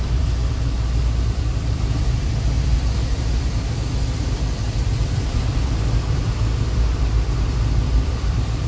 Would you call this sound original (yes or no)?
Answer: no